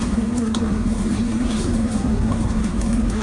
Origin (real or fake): fake